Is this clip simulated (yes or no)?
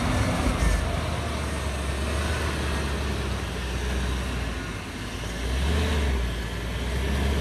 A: no